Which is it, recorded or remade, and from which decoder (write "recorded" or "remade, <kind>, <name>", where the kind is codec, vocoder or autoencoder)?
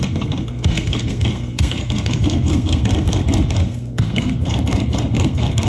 remade, codec, SNAC